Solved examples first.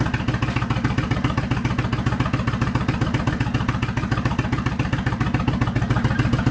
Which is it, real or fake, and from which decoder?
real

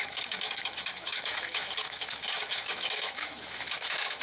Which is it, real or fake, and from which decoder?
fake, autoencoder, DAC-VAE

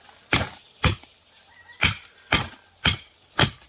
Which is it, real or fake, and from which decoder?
real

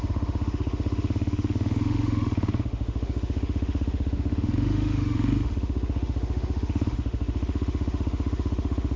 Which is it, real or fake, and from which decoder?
fake, autoencoder, DAC-VAE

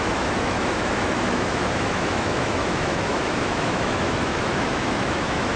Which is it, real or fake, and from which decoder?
fake, autoencoder, DAC-VAE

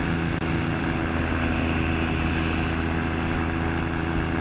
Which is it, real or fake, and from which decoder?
real